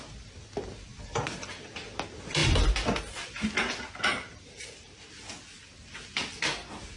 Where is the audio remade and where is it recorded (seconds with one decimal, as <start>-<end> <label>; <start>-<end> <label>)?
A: 0.0-0.9 recorded; 0.9-1.7 remade; 1.7-4.1 recorded; 4.1-5.1 remade; 5.1-7.0 recorded